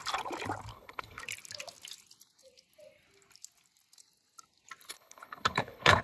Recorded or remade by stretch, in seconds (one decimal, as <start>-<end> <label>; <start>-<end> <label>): 0.0-0.7 recorded; 0.7-1.2 remade; 1.2-4.9 recorded; 4.9-6.0 remade